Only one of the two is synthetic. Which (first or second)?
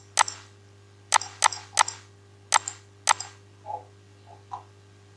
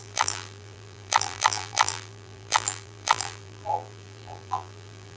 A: second